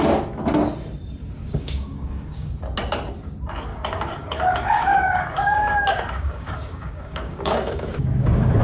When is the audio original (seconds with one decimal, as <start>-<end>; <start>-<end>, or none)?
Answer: 0.0-1.4; 2.6-3.7